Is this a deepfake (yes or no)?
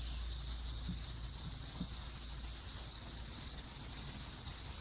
no